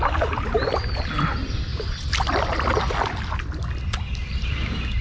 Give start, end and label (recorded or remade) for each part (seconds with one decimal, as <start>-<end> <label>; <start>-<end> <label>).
0.0-1.7 recorded; 1.7-3.7 remade; 3.7-5.0 recorded